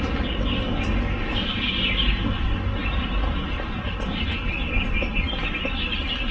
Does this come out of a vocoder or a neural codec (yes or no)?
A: no